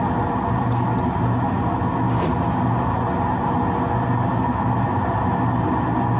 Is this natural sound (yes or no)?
yes